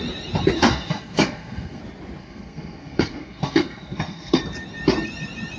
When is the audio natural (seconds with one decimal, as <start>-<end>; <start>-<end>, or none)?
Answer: 0.0-0.7; 1.8-2.2; 4.4-5.6